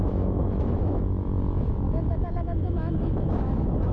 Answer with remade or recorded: remade